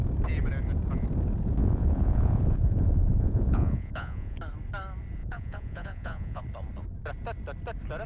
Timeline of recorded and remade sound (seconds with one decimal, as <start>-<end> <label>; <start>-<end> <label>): 0.0-1.6 recorded; 1.6-4.4 remade; 4.4-5.2 recorded; 5.2-6.4 remade; 6.4-8.1 recorded